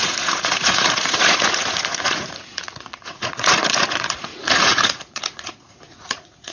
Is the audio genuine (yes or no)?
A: no